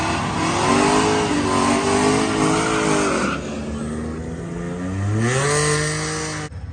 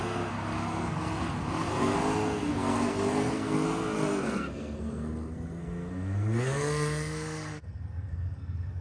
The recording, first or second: first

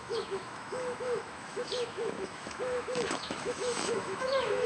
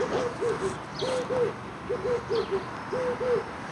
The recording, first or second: second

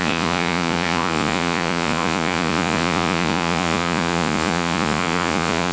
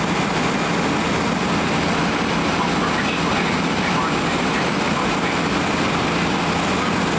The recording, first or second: second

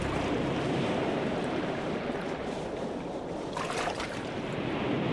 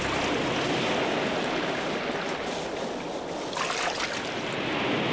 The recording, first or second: second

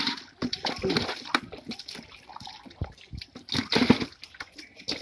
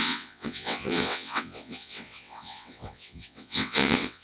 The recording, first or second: first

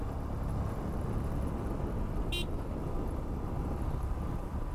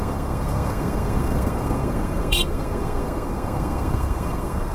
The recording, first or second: first